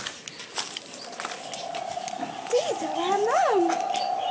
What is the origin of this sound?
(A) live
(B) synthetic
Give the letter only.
A